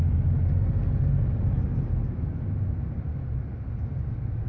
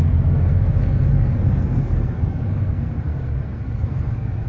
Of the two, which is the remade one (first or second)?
second